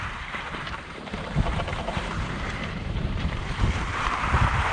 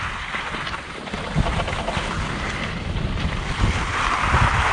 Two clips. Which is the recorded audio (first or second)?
second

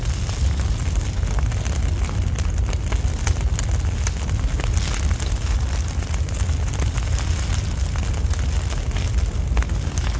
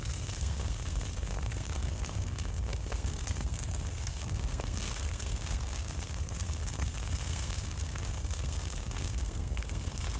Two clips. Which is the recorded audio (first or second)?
first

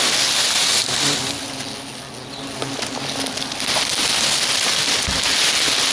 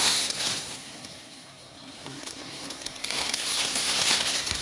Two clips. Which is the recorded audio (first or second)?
first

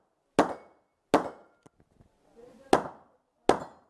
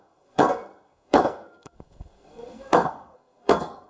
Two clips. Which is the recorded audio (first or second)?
first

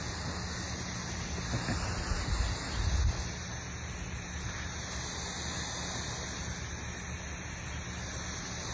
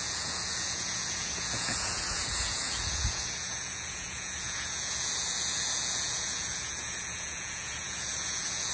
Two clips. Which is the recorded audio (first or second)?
first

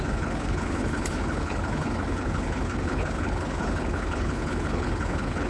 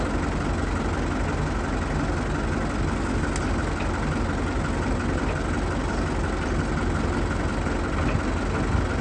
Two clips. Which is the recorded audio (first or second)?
second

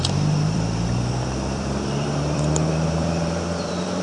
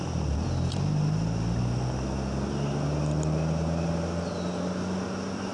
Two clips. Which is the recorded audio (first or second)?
second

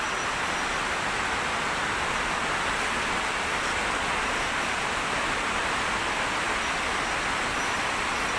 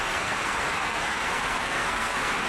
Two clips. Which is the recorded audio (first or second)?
first